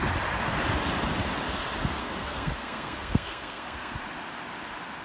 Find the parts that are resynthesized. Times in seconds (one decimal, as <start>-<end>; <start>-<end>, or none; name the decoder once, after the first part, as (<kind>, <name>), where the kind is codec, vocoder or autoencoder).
2.0-4.0 (codec, SNAC)